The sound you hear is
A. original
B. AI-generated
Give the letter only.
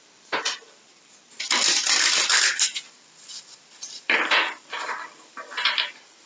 B